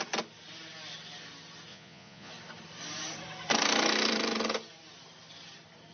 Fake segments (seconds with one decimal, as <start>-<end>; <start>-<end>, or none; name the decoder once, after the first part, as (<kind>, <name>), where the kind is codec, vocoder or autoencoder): 1.7-2.3 (vocoder, Vocos)